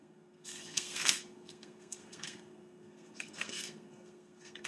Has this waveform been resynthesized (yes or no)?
yes